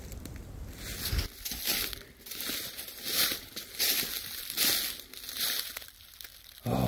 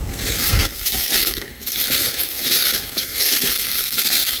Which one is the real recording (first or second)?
first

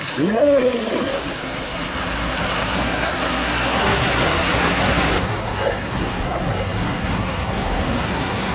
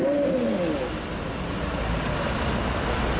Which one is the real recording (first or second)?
second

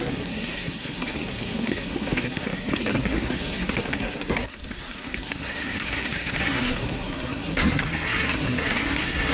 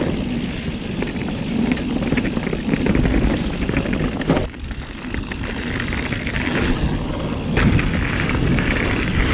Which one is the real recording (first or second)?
second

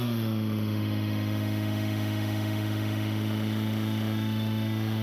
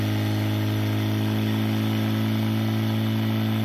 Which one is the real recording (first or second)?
second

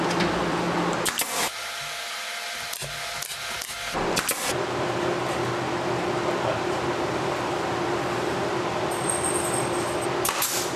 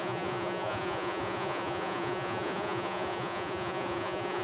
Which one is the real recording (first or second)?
first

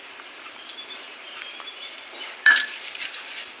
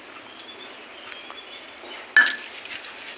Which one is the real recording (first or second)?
second